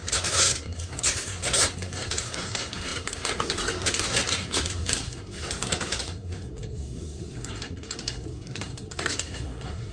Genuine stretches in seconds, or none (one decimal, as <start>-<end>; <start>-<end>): none